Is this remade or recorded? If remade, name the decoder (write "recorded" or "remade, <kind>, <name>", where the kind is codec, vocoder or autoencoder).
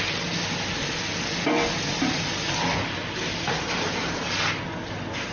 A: recorded